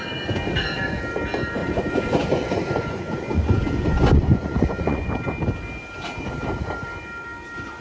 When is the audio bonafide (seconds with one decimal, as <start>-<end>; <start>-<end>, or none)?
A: 0.0-1.6; 5.1-7.8